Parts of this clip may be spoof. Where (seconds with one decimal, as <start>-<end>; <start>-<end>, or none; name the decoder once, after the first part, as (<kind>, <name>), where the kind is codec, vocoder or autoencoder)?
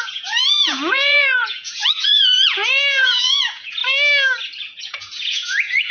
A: 0.0-3.8 (vocoder, Vocos); 4.8-5.9